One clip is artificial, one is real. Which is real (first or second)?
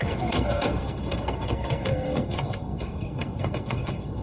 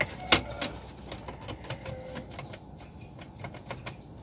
second